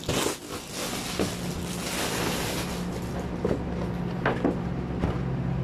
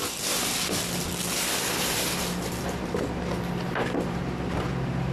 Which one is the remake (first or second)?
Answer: second